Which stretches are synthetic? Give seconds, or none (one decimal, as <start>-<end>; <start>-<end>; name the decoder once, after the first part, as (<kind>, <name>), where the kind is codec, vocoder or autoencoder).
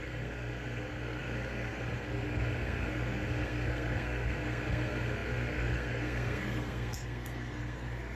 0.0-8.2 (codec, SNAC)